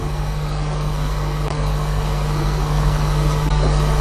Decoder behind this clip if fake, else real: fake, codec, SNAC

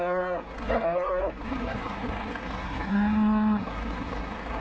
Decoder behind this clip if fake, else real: fake, codec, SNAC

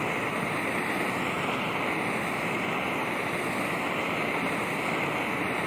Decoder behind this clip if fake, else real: real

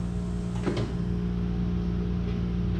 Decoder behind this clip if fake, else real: real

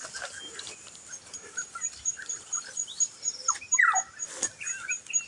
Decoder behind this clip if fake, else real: real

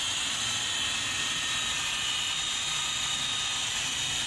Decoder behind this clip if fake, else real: real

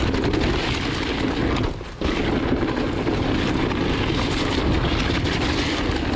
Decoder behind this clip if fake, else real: real